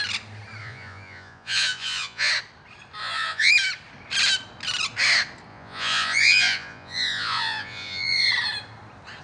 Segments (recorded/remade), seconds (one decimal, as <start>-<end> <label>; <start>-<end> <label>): 0.0-0.6 recorded; 0.6-2.3 remade; 2.3-3.0 recorded; 3.0-3.5 remade; 3.5-5.5 recorded; 5.5-8.3 remade; 8.3-9.2 recorded